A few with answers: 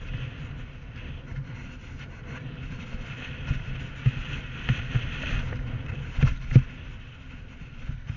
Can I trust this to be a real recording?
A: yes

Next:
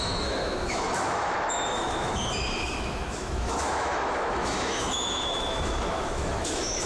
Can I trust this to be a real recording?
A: no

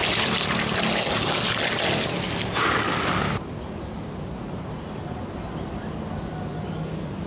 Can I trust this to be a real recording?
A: yes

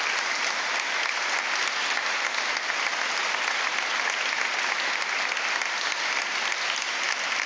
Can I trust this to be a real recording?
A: yes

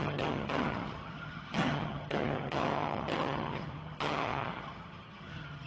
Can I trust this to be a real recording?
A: no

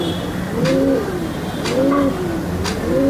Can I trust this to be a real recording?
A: yes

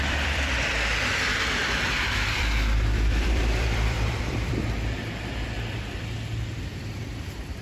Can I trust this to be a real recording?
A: no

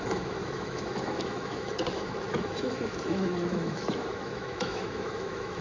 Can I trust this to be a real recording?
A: no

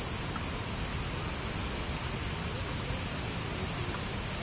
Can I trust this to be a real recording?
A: yes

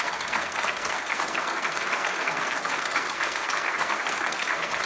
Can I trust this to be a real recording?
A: no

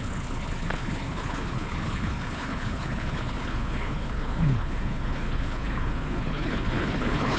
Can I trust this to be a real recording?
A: no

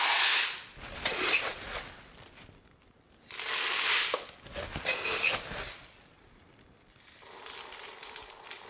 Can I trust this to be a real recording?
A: yes